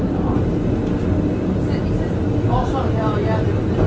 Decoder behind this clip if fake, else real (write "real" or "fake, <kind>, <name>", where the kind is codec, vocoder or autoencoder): real